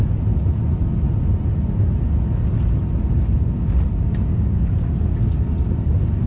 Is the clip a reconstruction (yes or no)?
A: no